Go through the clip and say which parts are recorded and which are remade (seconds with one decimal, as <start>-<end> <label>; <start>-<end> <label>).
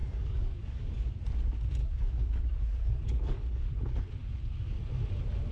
0.0-1.1 remade; 1.1-1.8 recorded; 1.8-3.6 remade; 3.6-5.5 recorded